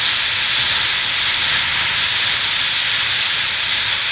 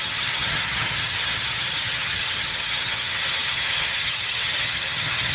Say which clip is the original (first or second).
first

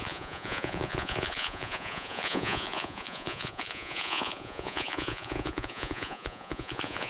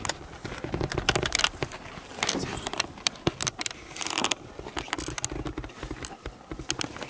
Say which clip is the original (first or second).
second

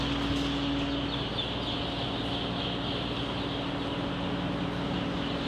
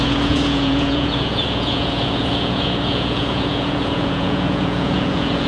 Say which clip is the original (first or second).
first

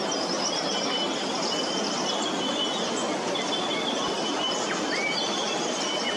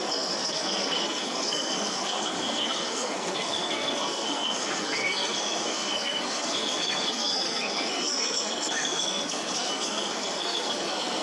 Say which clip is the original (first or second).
first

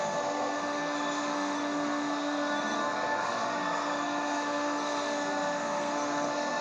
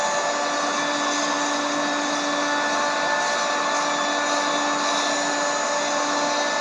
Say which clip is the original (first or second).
second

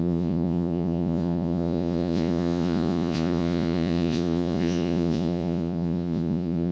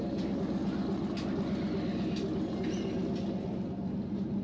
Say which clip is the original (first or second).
second